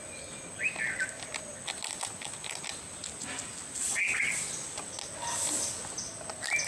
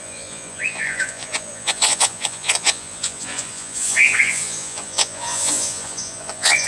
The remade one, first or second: second